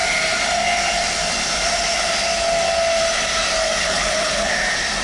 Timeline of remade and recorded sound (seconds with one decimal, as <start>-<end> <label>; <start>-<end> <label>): 0.0-3.8 recorded; 3.8-4.5 remade; 4.5-5.0 recorded